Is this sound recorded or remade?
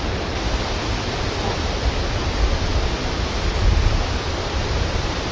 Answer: recorded